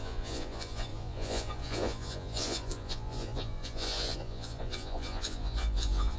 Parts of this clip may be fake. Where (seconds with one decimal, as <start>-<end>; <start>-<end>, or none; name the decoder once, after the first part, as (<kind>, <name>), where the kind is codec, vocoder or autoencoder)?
0.0-6.2 (vocoder, Vocos)